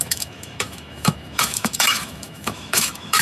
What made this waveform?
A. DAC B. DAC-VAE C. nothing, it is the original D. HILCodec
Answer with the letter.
B